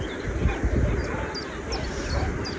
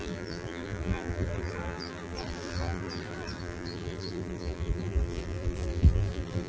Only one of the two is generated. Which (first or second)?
second